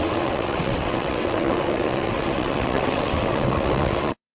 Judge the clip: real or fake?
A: fake